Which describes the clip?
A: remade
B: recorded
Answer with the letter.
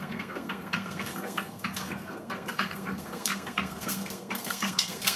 A